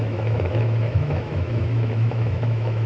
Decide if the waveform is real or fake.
fake